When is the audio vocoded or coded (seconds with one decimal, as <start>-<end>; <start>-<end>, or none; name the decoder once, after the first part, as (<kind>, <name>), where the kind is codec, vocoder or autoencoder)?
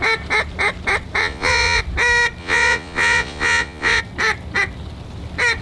1.2-1.8 (vocoder, Vocos); 2.4-4.0